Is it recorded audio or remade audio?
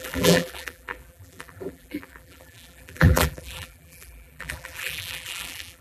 remade